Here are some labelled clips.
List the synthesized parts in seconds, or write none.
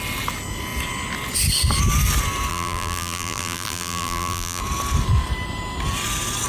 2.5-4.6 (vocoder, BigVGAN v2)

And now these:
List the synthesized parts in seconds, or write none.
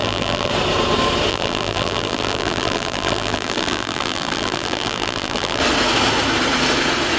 0.0-0.5 (vocoder, BigVGAN v2); 1.3-5.6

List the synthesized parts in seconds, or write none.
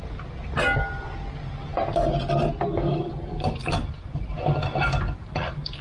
none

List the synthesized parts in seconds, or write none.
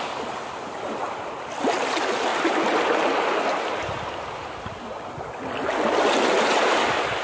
none